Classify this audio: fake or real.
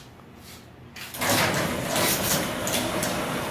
real